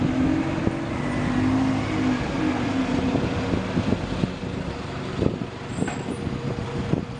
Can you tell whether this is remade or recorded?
recorded